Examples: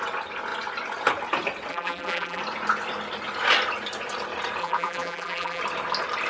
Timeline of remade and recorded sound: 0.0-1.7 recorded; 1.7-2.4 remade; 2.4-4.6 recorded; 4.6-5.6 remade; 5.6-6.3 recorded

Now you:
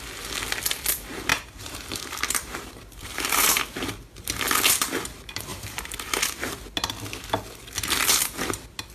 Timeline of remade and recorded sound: 0.0-1.3 recorded; 1.3-3.6 remade; 3.6-5.5 recorded; 5.5-6.5 remade; 6.5-8.9 recorded

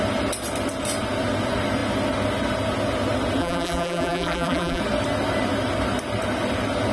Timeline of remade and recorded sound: 0.0-3.4 recorded; 3.4-4.8 remade; 4.8-6.9 recorded

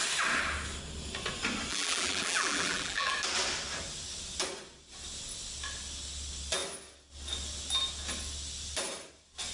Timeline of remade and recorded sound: 0.0-1.7 recorded; 1.7-3.1 remade; 3.1-9.5 recorded

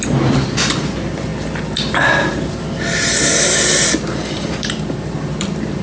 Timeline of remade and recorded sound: 0.0-1.3 remade; 1.3-4.3 recorded; 4.3-5.8 remade

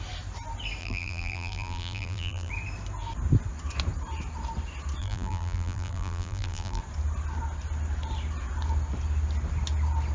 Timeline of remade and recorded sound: 0.0-0.8 recorded; 0.8-2.5 remade; 2.5-5.0 recorded; 5.0-6.8 remade; 6.8-10.1 recorded